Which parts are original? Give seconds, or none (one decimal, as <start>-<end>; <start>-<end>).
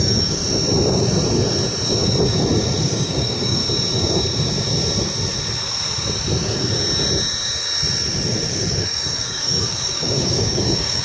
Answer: 0.4-2.8; 3.6-8.5